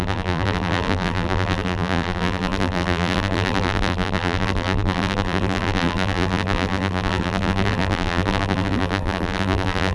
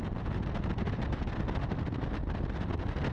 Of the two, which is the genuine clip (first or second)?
second